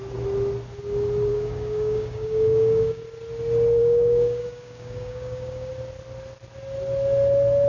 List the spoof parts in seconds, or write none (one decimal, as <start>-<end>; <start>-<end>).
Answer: 1.3-3.0; 3.8-5.7